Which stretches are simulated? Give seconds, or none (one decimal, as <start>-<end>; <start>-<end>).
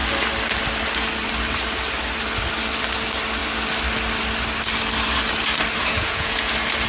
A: 5.8-6.5